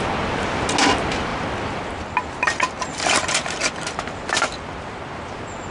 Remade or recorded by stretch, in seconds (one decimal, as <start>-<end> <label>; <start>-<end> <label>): 0.0-5.7 recorded